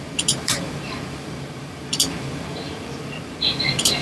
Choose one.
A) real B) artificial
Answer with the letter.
B